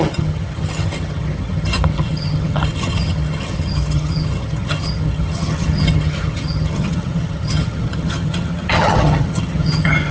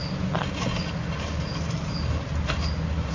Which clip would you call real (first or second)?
second